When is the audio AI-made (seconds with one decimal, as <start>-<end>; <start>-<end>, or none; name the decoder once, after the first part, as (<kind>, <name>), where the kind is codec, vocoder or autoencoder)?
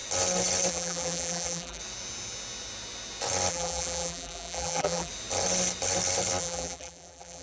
0.7-1.8 (vocoder, BigVGAN v2); 3.5-5.1; 6.4-7.4